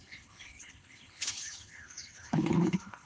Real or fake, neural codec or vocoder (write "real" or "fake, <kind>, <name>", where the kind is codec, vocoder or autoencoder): fake, codec, HILCodec